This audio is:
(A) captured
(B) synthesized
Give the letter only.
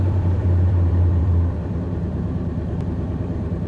B